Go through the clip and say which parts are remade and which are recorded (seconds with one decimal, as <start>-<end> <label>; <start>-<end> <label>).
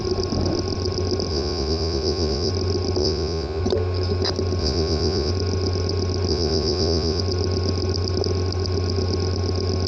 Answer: 0.0-1.3 recorded; 1.3-2.5 remade; 2.5-3.0 recorded; 3.0-3.6 remade; 3.6-4.6 recorded; 4.6-5.3 remade; 5.3-6.3 recorded; 6.3-7.2 remade; 7.2-9.9 recorded